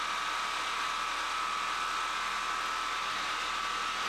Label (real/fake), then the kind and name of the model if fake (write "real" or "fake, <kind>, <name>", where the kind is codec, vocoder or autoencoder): real